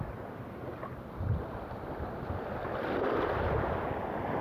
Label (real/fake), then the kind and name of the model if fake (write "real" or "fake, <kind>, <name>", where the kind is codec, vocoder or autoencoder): real